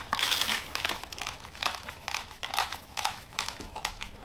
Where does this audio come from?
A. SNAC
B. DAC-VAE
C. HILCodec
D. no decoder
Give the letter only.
B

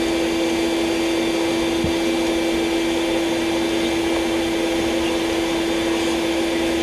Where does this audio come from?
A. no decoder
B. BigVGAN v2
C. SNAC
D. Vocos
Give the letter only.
A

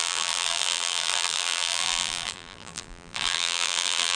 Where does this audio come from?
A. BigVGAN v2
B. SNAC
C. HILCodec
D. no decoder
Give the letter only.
A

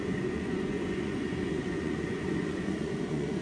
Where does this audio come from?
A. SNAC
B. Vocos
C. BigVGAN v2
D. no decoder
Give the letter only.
B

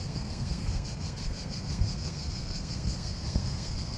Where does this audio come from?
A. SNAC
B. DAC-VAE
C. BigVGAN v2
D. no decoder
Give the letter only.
A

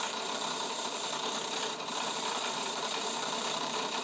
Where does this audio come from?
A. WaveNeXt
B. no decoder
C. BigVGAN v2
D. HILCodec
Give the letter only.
C